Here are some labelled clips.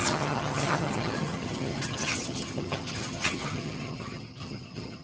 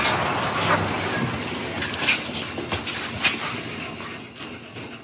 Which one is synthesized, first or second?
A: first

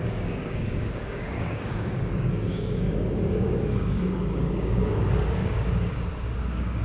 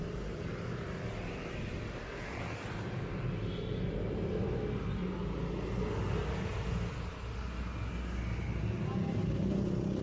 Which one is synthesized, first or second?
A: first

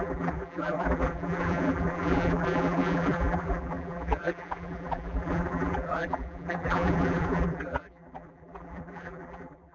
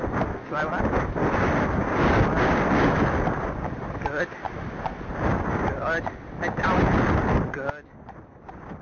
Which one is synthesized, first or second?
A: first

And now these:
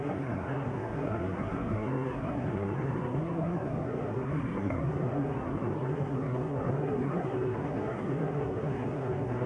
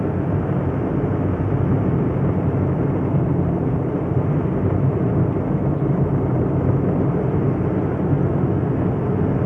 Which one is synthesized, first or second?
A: first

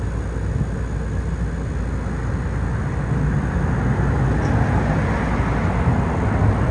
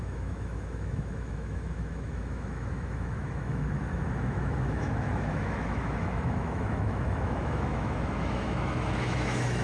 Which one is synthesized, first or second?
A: second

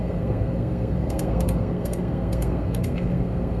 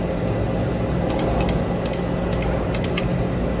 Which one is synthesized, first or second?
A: first